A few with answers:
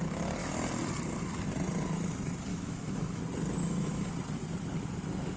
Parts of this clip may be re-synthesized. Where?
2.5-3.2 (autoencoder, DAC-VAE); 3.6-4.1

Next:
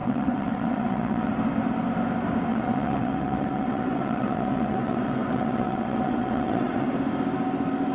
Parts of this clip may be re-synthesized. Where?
0.0-1.3 (vocoder, WaveNeXt); 2.5-6.9

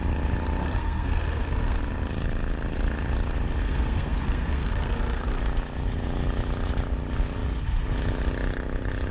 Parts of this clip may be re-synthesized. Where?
0.6-1.8 (codec, SNAC); 3.6-5.4